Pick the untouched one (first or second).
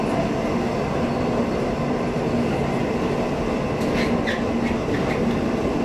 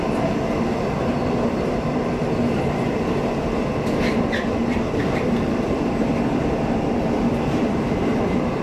first